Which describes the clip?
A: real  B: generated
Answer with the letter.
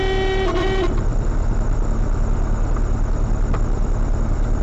A